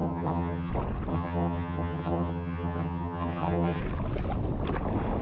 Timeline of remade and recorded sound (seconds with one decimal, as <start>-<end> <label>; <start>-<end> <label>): 0.0-0.7 remade; 0.7-1.1 recorded; 1.1-3.8 remade; 3.8-5.2 recorded